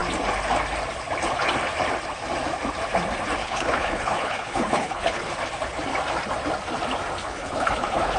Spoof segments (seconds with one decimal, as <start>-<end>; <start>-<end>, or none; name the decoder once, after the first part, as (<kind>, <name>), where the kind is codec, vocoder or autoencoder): 3.4-5.3 (codec, HILCodec); 7.2-8.2